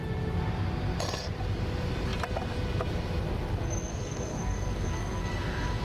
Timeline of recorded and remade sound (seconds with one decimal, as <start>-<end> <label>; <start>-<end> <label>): 0.0-3.9 recorded; 3.9-5.2 remade; 5.2-5.8 recorded